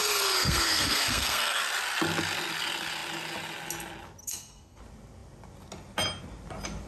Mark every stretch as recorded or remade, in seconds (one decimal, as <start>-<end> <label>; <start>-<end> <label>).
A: 0.0-1.6 remade; 1.6-4.2 recorded; 4.2-4.8 remade; 4.8-6.9 recorded